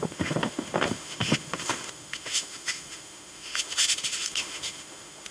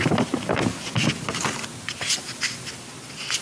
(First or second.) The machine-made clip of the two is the first